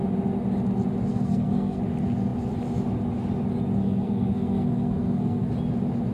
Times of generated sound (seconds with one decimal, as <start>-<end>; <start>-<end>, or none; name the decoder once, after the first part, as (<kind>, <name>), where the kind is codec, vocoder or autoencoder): 1.1-1.8 (codec, SNAC); 3.8-5.5